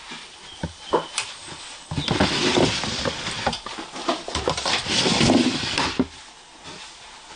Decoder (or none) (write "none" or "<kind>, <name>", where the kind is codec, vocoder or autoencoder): none